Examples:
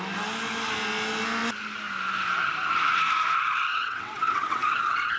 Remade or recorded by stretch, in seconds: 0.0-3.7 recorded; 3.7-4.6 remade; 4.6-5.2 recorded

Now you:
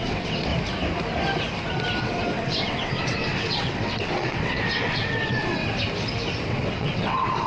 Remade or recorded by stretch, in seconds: 0.0-0.5 remade; 0.5-2.0 recorded; 2.0-5.6 remade; 5.6-6.5 recorded; 6.5-7.5 remade

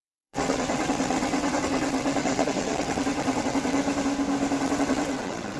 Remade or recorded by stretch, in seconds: 0.0-3.8 remade; 3.8-4.6 recorded; 4.6-5.6 remade

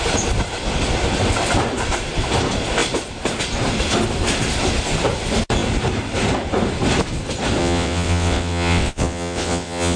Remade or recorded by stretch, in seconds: 0.0-7.6 recorded; 7.6-10.0 remade